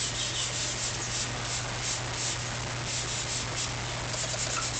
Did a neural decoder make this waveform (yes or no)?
no